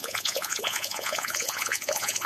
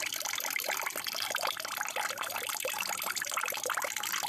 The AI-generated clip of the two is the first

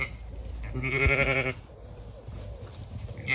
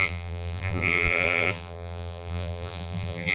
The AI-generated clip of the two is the second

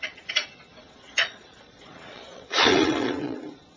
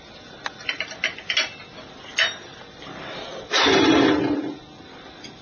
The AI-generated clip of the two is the first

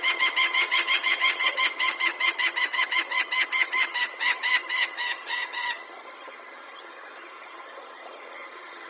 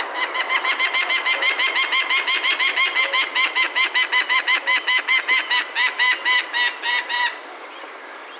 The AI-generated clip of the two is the first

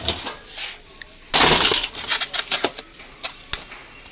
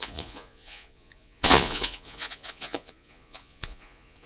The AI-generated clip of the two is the second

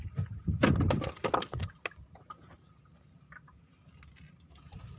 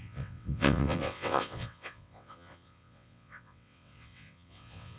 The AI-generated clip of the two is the second